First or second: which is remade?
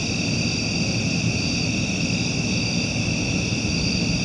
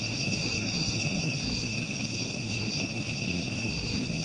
second